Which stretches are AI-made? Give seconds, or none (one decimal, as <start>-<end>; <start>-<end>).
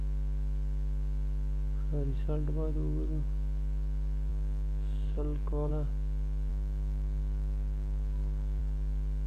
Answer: 4.3-5.7; 6.5-8.6